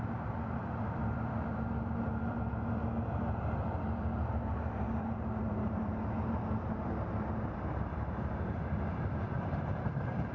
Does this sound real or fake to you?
fake